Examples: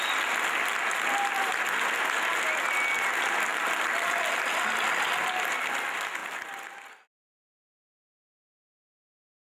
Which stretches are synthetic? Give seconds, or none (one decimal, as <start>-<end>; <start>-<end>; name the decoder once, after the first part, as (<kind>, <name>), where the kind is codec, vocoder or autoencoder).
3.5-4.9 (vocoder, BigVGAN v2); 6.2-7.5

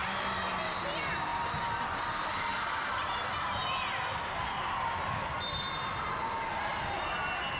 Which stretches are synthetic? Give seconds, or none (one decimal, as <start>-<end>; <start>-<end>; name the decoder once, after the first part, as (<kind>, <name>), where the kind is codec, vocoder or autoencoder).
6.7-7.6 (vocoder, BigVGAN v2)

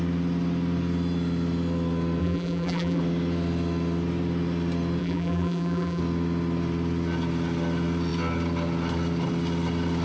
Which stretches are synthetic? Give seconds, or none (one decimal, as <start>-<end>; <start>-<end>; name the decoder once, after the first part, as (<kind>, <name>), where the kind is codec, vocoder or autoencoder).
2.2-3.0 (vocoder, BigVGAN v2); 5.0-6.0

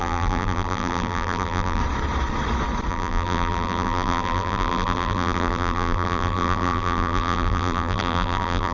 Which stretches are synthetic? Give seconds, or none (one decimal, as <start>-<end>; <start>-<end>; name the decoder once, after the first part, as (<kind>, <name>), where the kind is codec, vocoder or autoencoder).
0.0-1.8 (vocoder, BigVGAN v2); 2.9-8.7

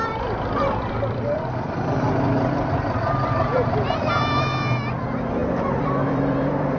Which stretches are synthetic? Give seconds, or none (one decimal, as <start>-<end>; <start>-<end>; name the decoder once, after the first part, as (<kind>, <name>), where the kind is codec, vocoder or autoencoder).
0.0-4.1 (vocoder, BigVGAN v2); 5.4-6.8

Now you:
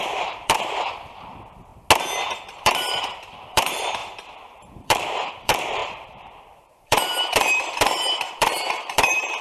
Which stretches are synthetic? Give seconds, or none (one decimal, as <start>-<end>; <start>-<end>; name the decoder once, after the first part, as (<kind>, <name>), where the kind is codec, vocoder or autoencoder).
0.0-1.7 (vocoder, BigVGAN v2); 2.6-9.4

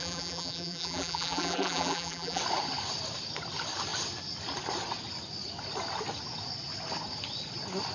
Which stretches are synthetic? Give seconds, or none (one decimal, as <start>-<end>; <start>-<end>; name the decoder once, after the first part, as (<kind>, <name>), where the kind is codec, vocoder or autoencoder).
0.0-2.4 (vocoder, BigVGAN v2)

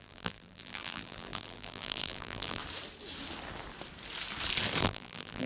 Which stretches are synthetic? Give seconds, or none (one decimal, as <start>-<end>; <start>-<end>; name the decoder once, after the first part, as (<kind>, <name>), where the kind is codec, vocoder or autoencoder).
0.0-2.6 (vocoder, BigVGAN v2); 4.8-5.5